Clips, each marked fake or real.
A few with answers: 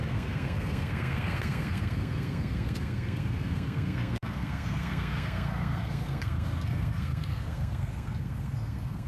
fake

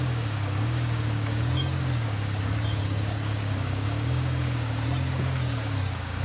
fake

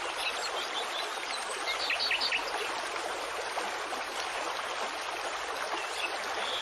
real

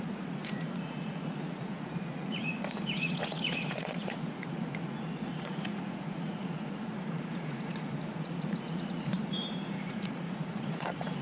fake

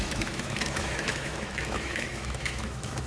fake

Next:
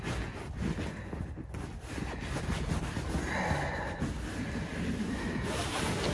real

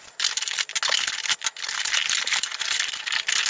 real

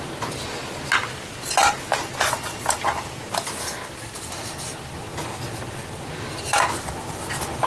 real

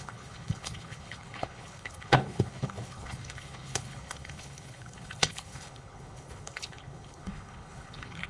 fake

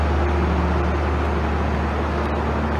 real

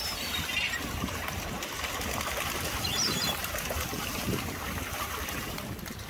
fake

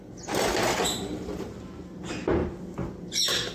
real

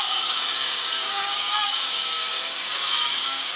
fake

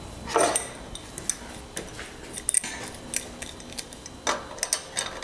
real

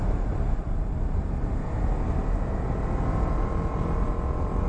real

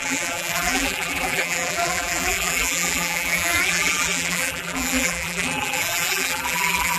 fake